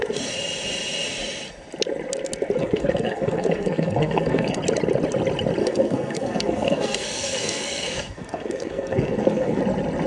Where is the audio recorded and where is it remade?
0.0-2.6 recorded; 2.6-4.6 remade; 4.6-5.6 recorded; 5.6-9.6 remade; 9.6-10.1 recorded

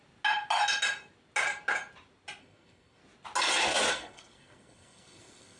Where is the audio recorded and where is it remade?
0.0-2.4 recorded; 2.4-3.0 remade; 3.0-3.9 recorded; 3.9-5.6 remade

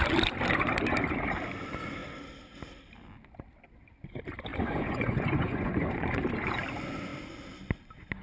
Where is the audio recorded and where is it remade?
0.0-4.5 recorded; 4.5-6.2 remade; 6.2-8.2 recorded

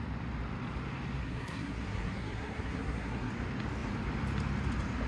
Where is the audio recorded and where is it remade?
0.0-1.2 recorded; 1.2-3.3 remade; 3.3-5.1 recorded

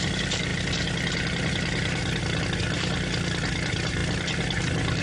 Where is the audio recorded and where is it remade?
0.0-5.0 recorded

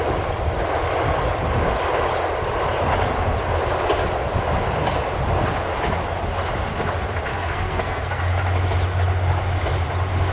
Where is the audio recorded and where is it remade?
0.0-7.3 recorded; 7.3-8.2 remade; 8.2-10.3 recorded

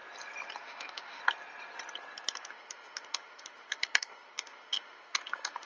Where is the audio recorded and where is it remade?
0.0-0.6 recorded; 0.6-1.2 remade; 1.2-2.4 recorded; 2.4-5.7 remade

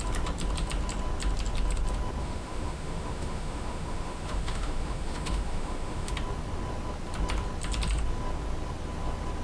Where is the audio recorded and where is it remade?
0.0-2.2 recorded; 2.2-6.1 remade; 6.1-9.4 recorded